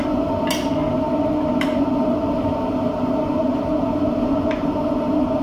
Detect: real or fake real